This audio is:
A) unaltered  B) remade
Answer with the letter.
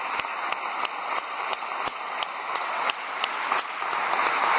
A